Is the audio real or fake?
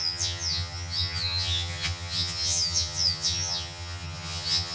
fake